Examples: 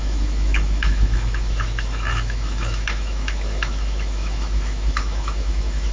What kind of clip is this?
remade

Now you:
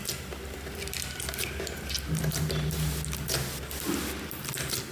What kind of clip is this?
recorded